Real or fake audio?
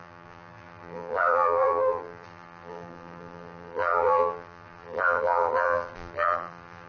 fake